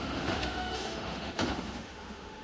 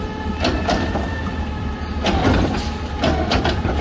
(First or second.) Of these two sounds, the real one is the second